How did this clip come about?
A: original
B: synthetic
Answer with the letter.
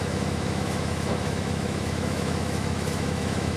B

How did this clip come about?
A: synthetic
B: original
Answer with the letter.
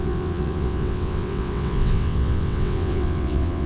A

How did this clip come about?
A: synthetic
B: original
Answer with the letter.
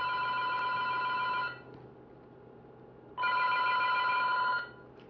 B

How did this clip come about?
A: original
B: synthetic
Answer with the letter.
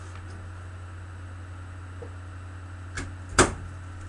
A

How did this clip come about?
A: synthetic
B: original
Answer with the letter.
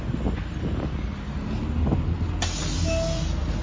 B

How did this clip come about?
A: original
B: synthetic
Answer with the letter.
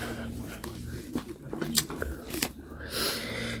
B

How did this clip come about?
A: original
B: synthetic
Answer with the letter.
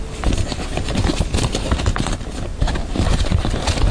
A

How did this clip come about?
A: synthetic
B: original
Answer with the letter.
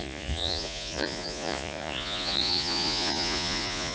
A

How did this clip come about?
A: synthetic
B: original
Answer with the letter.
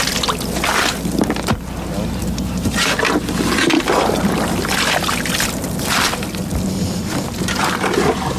B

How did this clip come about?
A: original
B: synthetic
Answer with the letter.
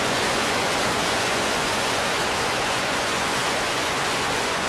B